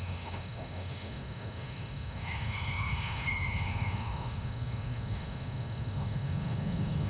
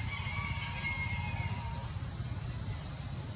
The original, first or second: second